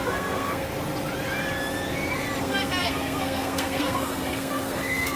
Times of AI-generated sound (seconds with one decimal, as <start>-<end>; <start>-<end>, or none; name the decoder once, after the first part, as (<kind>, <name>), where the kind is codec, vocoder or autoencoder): 0.0-0.7 (codec, SNAC); 2.4-5.2